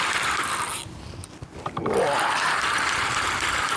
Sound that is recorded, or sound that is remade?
recorded